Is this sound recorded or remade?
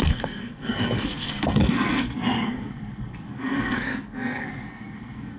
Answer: remade